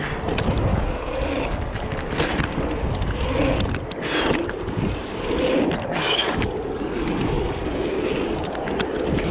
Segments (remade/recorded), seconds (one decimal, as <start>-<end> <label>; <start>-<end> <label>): 0.0-0.7 recorded; 0.7-2.3 remade; 2.3-5.9 recorded; 5.9-7.6 remade; 7.6-9.3 recorded